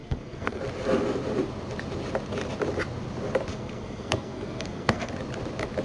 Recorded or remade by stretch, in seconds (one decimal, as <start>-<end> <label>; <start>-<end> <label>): 0.0-0.6 remade; 0.6-3.5 recorded; 3.5-5.1 remade; 5.1-5.8 recorded